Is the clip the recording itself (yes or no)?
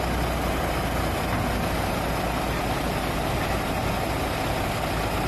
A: yes